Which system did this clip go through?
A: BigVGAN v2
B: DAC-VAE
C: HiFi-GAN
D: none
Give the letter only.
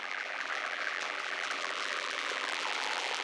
A